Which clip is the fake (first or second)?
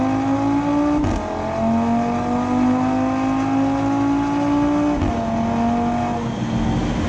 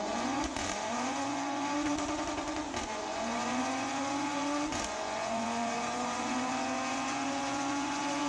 second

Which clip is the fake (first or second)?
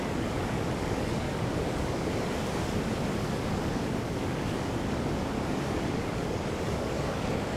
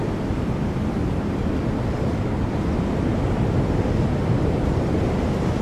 first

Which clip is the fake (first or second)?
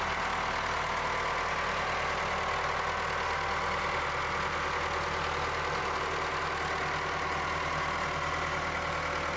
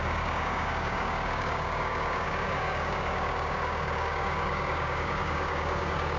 second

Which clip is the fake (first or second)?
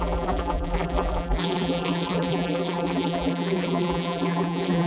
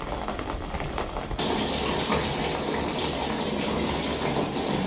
first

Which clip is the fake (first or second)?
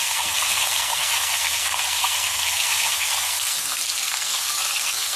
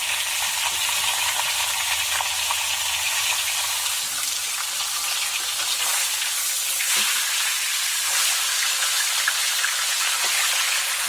first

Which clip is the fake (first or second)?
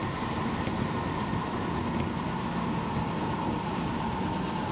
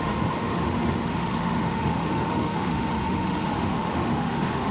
second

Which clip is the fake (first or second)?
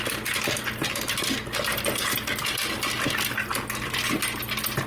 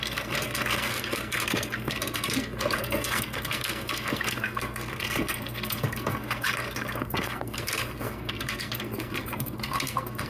second